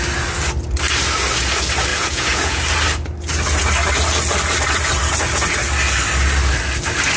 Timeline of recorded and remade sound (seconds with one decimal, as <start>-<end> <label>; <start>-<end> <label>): 0.0-1.9 recorded; 1.9-2.6 remade; 2.6-7.2 recorded

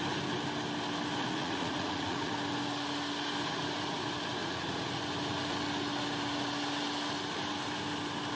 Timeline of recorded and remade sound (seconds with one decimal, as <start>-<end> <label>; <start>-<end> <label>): 0.0-1.2 recorded; 1.2-2.3 remade; 2.3-4.4 recorded; 4.4-5.0 remade; 5.0-8.4 recorded

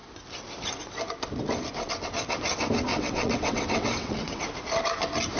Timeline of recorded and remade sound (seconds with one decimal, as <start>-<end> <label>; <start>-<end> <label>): 0.0-2.9 recorded; 2.9-4.4 remade; 4.4-5.4 recorded

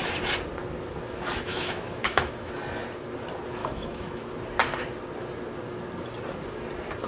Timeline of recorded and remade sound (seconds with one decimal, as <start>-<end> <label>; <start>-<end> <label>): 0.0-1.5 recorded; 1.5-2.5 remade; 2.5-3.6 recorded; 3.6-4.2 remade; 4.2-7.1 recorded

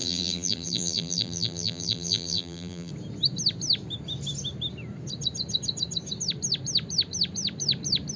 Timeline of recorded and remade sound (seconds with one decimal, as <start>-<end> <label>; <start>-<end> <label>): 0.0-2.9 remade; 2.9-8.2 recorded

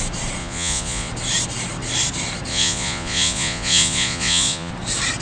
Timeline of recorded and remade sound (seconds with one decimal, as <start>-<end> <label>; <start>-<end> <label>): 0.0-0.4 recorded; 0.4-1.1 remade; 1.1-2.5 recorded; 2.5-4.7 remade; 4.7-5.2 recorded